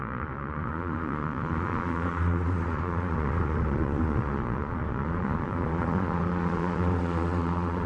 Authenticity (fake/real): fake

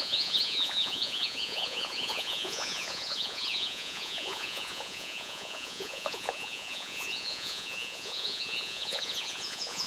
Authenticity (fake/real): fake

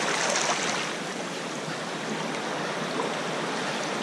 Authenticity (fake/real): real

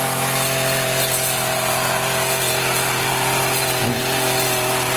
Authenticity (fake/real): real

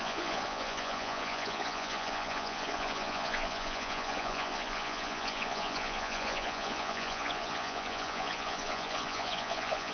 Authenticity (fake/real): fake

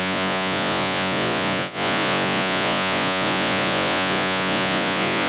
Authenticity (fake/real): fake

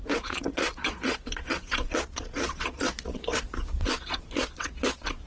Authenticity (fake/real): fake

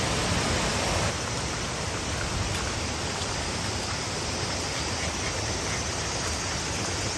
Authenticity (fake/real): real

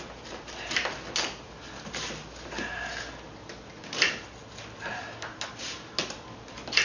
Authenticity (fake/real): real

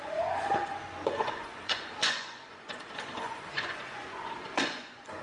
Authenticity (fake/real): fake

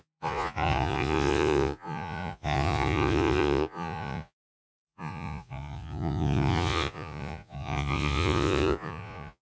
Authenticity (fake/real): fake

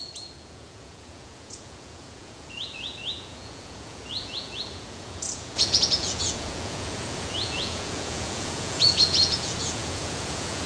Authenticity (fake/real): fake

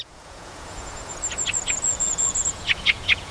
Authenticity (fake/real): fake